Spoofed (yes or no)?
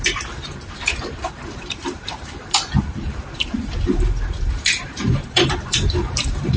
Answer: yes